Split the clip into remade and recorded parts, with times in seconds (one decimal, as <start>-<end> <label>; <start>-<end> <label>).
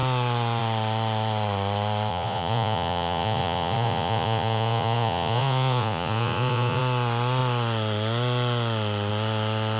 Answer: 0.0-2.1 recorded; 2.1-6.8 remade; 6.8-9.8 recorded